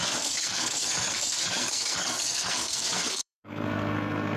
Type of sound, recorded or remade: remade